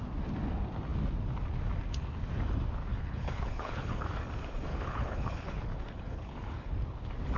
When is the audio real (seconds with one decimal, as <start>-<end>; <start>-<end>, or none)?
0.0-2.9; 4.1-4.7; 6.7-7.4